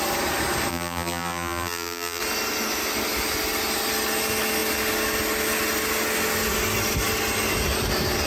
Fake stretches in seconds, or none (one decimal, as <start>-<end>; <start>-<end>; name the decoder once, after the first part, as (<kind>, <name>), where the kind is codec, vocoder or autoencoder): 0.7-2.2 (vocoder, BigVGAN v2)